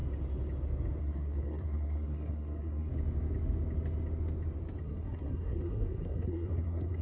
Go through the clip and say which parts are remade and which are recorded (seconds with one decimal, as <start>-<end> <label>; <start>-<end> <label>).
0.0-1.0 recorded; 1.0-2.9 remade; 2.9-4.8 recorded; 4.8-7.0 remade

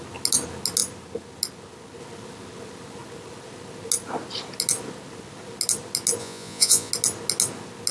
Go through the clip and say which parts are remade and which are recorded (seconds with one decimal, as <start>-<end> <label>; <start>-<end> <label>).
0.0-6.2 recorded; 6.2-6.9 remade; 6.9-7.9 recorded